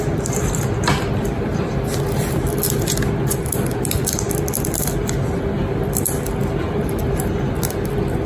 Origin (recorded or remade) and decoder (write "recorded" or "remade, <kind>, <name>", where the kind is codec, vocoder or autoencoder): recorded